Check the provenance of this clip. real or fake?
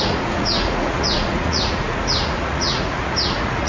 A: fake